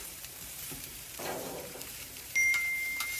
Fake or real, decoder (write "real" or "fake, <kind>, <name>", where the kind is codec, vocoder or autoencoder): fake, vocoder, BigVGAN v2